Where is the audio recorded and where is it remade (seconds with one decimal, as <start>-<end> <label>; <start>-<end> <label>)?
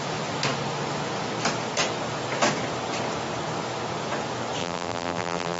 0.0-4.6 recorded; 4.6-5.6 remade